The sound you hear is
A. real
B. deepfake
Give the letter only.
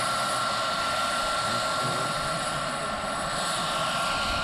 B